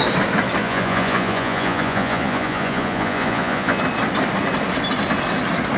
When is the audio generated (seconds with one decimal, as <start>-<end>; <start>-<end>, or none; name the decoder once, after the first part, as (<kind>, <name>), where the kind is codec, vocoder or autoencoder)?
0.6-3.8 (vocoder, Vocos)